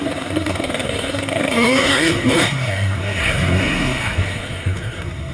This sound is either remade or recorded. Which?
remade